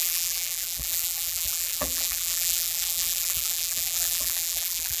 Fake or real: fake